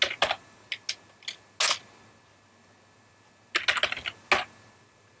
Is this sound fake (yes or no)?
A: no